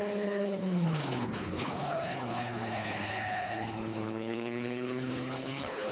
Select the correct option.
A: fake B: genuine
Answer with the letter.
A